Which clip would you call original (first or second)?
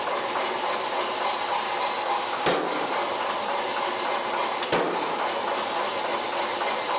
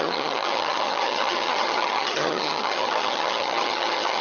first